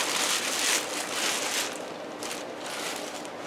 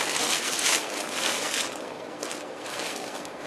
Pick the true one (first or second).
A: first